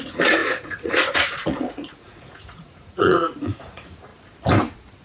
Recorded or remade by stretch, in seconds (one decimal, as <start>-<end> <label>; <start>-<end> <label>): 0.0-4.1 remade; 4.1-5.0 recorded